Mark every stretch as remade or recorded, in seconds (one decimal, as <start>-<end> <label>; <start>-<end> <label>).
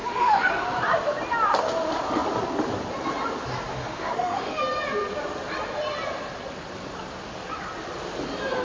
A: 0.0-0.5 remade; 0.5-3.7 recorded; 3.7-4.6 remade; 4.6-8.6 recorded